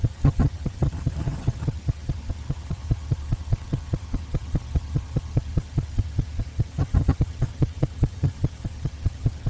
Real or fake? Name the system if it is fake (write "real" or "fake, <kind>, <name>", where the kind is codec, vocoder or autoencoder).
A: fake, vocoder, HiFi-GAN